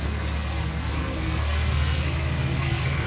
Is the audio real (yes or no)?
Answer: no